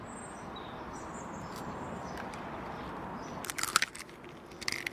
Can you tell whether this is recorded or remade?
recorded